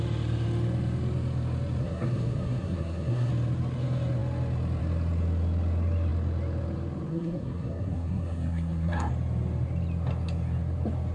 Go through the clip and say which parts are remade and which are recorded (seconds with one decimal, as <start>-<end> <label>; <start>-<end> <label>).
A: 0.0-1.8 recorded; 1.8-3.3 remade; 3.3-7.1 recorded; 7.1-9.1 remade; 9.1-11.1 recorded